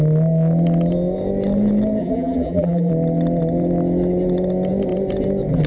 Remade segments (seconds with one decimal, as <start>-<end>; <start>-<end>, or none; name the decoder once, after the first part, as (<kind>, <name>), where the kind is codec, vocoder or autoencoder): 2.0-2.9 (vocoder, BigVGAN v2)